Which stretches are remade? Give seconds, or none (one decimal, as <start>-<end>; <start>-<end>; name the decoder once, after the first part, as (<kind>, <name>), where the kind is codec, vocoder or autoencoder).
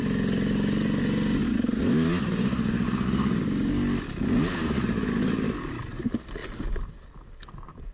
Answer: none